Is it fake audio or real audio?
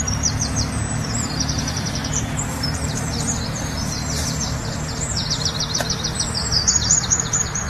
fake